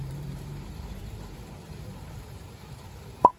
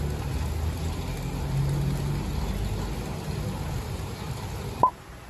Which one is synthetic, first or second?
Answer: first